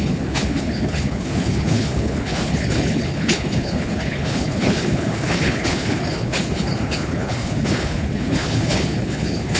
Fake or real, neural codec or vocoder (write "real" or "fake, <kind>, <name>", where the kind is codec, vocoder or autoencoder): fake, codec, HILCodec